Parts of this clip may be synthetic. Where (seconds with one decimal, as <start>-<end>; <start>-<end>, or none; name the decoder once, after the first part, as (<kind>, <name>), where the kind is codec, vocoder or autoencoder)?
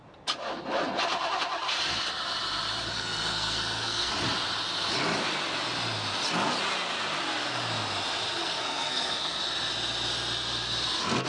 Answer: 2.9-4.1 (codec, SNAC); 8.4-9.4